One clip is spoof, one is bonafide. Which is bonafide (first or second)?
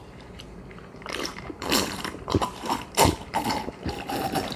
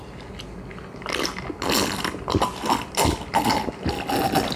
second